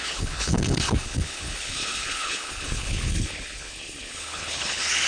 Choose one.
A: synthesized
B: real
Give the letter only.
A